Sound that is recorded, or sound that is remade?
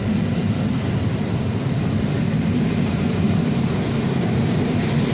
remade